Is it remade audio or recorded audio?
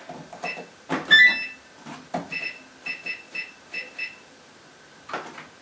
recorded